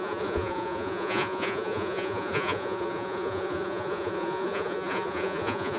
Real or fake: fake